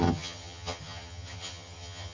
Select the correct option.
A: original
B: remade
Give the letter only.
B